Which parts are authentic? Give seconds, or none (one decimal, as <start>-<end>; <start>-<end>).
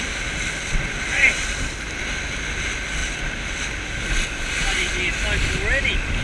0.0-6.2